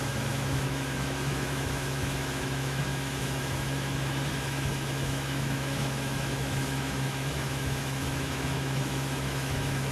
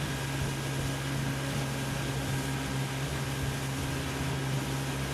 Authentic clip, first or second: second